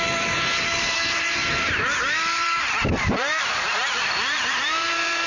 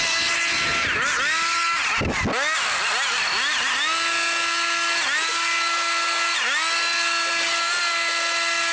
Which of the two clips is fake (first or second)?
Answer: first